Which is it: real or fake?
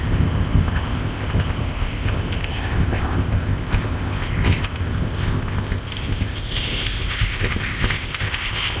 fake